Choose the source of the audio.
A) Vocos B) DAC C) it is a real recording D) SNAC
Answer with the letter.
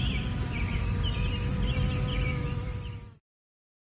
C